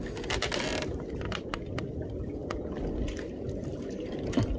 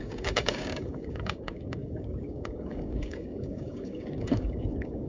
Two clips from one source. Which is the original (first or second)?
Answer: first